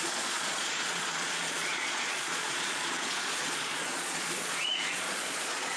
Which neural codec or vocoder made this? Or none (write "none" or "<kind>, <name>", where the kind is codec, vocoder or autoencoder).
vocoder, Vocos